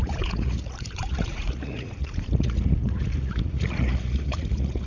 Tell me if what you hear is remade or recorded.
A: remade